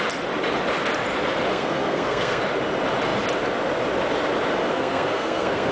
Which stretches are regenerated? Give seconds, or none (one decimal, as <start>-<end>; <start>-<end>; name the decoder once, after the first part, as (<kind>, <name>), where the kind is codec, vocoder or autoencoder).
1.5-2.4 (codec, SNAC); 4.7-5.7